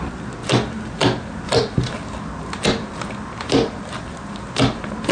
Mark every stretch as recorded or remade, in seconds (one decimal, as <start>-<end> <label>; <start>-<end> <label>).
0.0-5.1 recorded